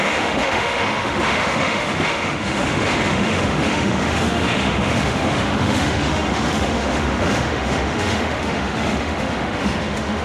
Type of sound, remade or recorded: remade